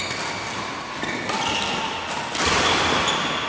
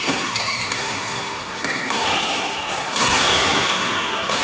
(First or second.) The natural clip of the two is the first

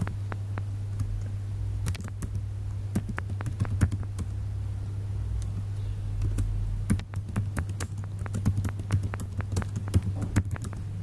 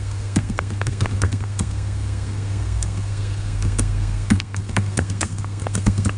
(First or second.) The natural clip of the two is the first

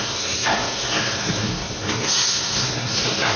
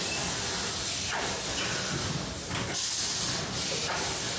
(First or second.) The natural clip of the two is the second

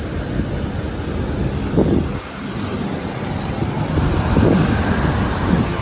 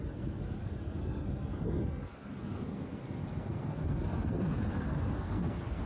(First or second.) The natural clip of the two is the first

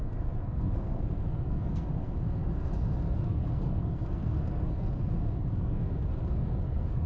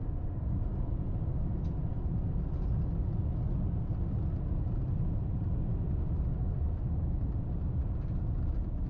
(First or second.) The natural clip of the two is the second